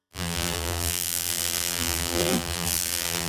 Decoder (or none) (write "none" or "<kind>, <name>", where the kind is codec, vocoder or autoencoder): vocoder, BigVGAN v2